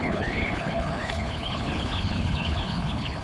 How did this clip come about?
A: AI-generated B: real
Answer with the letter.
A